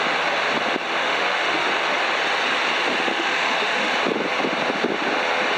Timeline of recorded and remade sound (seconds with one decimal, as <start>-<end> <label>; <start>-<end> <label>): 0.0-1.0 recorded; 1.0-1.7 remade; 1.7-3.1 recorded; 3.1-3.9 remade; 3.9-5.6 recorded